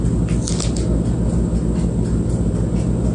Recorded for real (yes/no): yes